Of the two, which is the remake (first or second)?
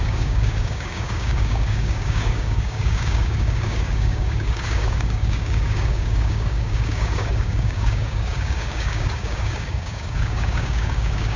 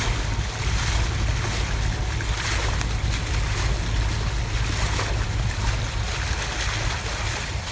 first